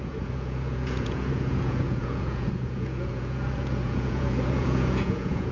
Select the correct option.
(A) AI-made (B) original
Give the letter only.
A